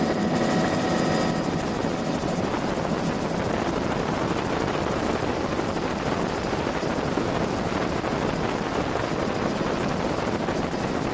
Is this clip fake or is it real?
real